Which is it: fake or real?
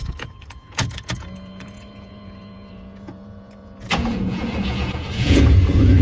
fake